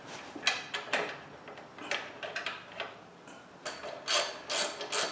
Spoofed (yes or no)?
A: no